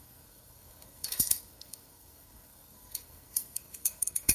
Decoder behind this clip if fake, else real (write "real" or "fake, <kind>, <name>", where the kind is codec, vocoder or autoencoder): fake, codec, SNAC